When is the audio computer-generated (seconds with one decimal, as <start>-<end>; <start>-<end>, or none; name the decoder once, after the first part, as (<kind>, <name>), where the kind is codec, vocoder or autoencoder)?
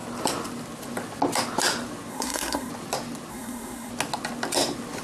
2.1-2.7 (codec, SNAC); 3.3-3.9